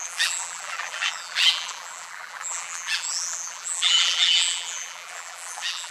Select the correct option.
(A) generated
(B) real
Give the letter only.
A